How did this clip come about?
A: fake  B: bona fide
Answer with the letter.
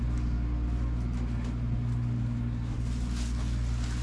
B